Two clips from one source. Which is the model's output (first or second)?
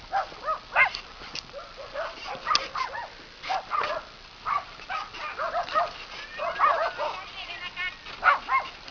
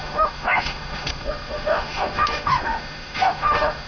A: second